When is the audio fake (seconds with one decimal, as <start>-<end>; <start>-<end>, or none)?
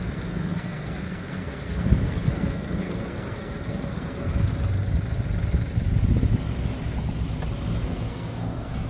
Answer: 0.0-4.5; 7.8-8.9